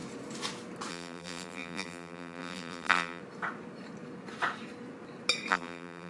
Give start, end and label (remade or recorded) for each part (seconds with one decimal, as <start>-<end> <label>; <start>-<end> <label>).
0.0-0.9 recorded; 0.9-3.2 remade; 3.2-5.5 recorded; 5.5-6.1 remade